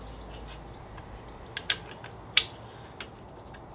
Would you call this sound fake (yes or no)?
no